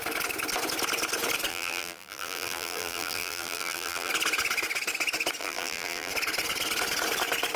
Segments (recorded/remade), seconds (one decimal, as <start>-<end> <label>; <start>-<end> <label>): 0.0-1.5 recorded; 1.5-4.1 remade; 4.1-5.4 recorded; 5.4-6.1 remade; 6.1-7.6 recorded